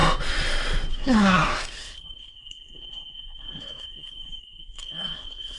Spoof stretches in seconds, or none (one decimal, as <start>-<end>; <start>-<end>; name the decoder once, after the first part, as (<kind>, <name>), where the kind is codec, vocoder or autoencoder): 0.9-5.6 (codec, SNAC)